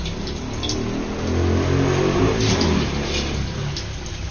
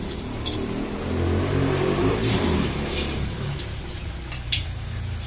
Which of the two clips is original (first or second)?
first